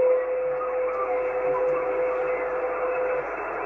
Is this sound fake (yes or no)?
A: no